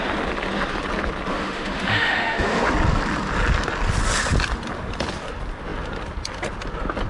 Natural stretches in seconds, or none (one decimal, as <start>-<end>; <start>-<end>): 0.0-1.3; 2.7-7.1